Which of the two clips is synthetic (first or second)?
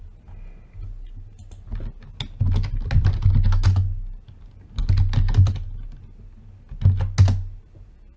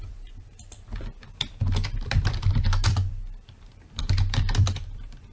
second